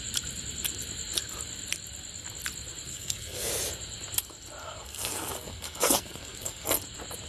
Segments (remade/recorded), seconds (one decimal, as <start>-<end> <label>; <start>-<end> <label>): 0.0-2.9 recorded; 2.9-3.5 remade; 3.5-4.6 recorded; 4.6-6.8 remade; 6.8-7.3 recorded